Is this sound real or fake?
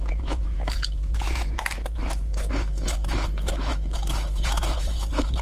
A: fake